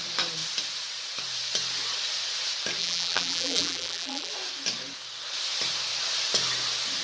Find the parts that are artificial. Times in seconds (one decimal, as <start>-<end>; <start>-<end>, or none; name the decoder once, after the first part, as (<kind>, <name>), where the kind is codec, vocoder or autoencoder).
2.8-4.3 (vocoder, BigVGAN v2)